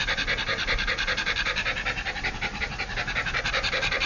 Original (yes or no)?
yes